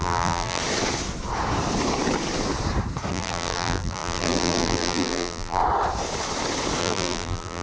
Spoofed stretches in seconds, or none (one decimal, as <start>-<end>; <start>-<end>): 0.0-0.6; 3.1-5.6; 6.8-7.6